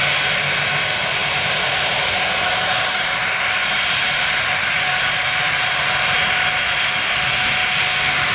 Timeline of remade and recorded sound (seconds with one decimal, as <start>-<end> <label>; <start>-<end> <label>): 0.0-1.2 recorded; 1.2-4.2 remade; 4.2-8.3 recorded